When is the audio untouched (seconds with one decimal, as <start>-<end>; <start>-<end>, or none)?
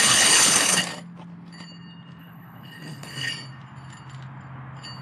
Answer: 0.8-2.2; 3.3-5.0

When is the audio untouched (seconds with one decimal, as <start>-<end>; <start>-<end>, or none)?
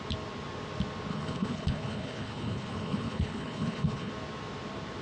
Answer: 0.0-1.1; 4.1-5.0